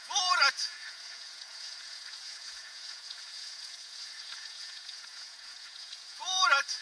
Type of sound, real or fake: fake